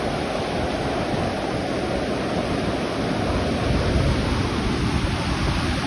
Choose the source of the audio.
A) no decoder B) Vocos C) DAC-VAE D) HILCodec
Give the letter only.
A